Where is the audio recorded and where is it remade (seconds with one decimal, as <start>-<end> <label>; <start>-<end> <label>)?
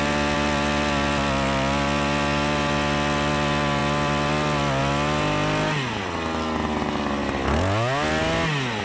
0.0-8.8 recorded